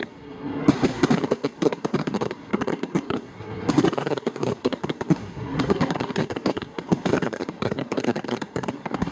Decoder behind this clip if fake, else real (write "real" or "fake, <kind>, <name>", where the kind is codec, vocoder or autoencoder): fake, codec, SNAC